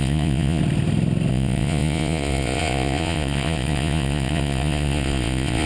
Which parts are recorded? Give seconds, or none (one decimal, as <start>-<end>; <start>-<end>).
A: 0.6-1.3